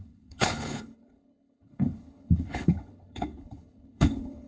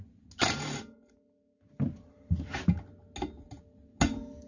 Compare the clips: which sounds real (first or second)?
second